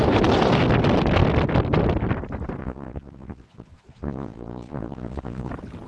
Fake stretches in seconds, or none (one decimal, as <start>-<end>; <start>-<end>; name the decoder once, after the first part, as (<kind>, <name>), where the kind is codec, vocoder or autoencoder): 2.6-5.5 (vocoder, Vocos)